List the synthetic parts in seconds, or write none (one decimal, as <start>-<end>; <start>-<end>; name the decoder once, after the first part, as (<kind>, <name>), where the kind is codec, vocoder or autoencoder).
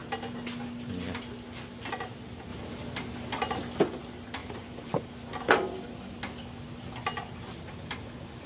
4.4-5.1 (vocoder, BigVGAN v2)